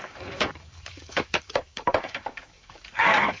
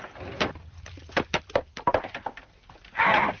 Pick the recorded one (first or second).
second